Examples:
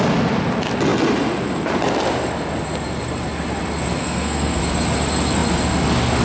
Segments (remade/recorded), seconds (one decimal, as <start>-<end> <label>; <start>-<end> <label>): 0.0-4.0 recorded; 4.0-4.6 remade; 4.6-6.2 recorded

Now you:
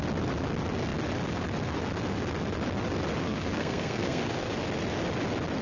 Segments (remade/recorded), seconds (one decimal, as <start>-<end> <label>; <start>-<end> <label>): 0.0-3.2 recorded; 3.2-4.5 remade; 4.5-5.6 recorded

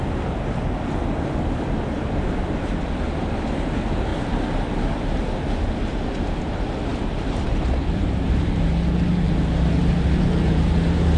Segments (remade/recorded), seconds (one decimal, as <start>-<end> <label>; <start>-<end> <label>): 0.0-11.2 recorded

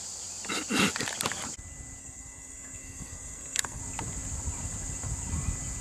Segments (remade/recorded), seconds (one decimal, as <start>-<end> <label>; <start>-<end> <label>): 0.0-2.0 recorded; 2.0-3.8 remade; 3.8-5.8 recorded

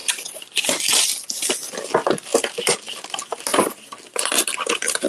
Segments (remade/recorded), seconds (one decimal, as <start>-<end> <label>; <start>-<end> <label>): 0.0-5.1 recorded

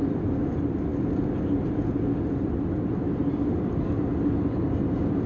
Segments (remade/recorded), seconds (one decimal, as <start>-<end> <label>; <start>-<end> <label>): 0.0-5.3 recorded

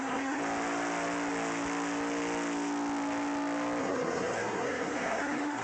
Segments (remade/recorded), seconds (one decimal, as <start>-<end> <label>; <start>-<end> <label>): 0.0-0.4 remade; 0.4-3.8 recorded; 3.8-5.6 remade